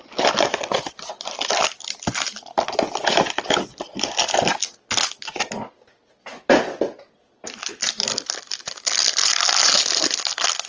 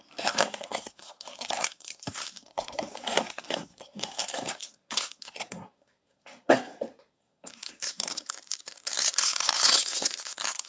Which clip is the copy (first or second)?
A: second